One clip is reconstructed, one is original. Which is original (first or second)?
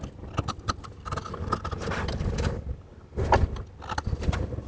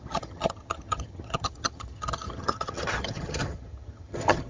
first